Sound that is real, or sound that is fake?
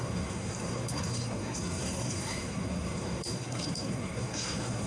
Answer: fake